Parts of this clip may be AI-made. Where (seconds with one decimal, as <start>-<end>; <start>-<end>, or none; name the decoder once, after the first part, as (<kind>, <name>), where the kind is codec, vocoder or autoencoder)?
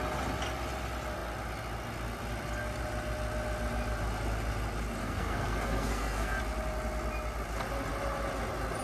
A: 5.0-6.4 (codec, SNAC)